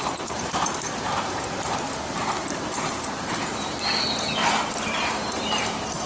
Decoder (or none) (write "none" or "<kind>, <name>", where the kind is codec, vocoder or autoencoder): vocoder, BigVGAN v2